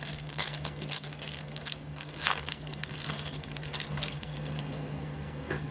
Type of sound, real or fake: fake